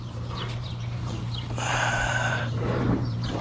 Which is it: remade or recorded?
remade